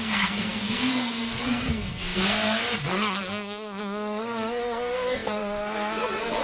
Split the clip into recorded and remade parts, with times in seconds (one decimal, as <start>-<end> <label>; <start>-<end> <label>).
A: 0.0-6.4 remade